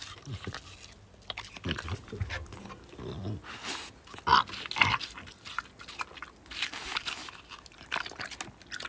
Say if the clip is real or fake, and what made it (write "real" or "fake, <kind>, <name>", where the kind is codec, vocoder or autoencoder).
real